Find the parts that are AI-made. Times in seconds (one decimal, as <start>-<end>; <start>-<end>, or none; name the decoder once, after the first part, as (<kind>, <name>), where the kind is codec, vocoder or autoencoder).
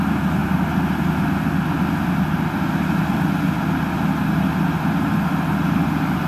none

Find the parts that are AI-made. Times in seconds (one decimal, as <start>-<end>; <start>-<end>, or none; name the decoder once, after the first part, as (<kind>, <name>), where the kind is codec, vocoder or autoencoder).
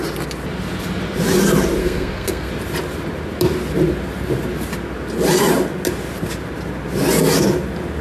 1.8-2.5 (codec, SNAC)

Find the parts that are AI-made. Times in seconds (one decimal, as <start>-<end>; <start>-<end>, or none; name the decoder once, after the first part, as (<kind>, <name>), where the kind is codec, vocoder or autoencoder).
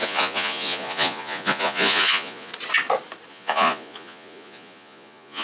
0.0-2.5 (vocoder, Vocos); 3.3-5.4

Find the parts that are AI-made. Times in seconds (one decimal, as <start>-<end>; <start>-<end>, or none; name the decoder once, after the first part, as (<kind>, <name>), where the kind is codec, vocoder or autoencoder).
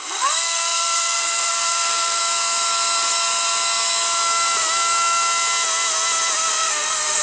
0.0-2.2 (codec, SNAC); 6.5-7.2